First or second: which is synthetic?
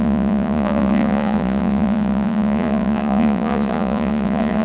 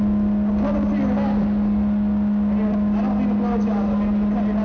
first